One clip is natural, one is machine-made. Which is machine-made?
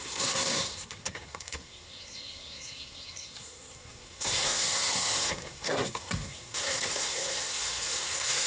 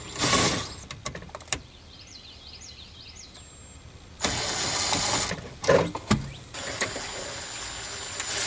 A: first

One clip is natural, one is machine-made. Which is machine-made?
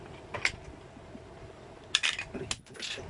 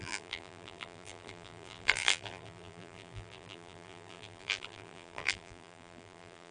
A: second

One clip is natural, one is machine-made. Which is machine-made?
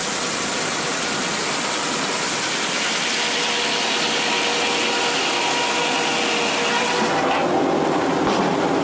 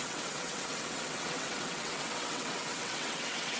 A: second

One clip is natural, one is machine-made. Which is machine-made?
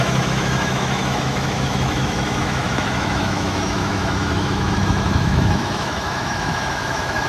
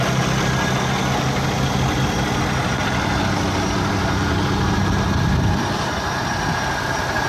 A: first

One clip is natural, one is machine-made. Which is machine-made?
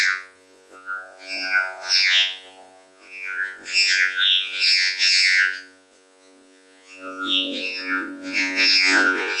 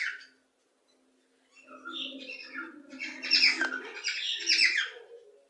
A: first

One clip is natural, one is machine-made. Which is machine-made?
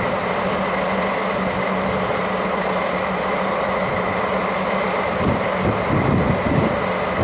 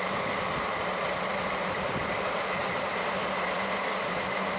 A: second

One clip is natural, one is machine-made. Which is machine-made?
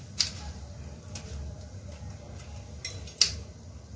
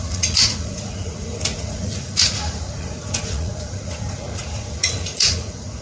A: second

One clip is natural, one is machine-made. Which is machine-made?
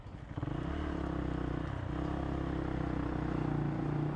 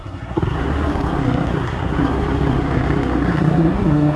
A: second